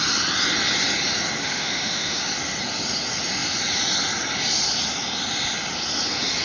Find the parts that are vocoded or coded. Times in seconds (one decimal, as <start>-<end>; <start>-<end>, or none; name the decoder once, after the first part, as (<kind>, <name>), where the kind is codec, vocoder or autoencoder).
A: 1.4-2.2 (autoencoder, DAC-VAE)